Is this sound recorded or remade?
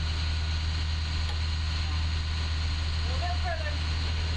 recorded